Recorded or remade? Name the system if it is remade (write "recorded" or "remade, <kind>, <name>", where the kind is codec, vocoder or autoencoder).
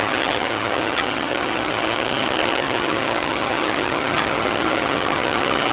remade, vocoder, HiFi-GAN